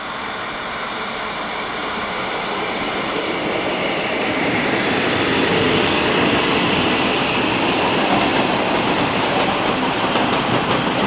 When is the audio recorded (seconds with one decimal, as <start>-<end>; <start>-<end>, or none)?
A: 0.0-1.8; 5.4-8.3; 10.5-11.1

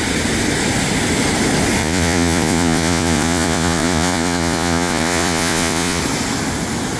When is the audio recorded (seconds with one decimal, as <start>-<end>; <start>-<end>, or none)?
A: 0.0-1.8; 6.0-7.0

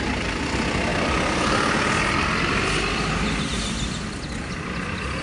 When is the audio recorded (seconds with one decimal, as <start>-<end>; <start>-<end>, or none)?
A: 0.0-5.2

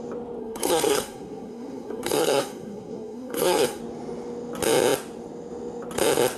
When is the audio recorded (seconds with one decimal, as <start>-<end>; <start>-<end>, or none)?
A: 0.0-0.4; 3.8-6.4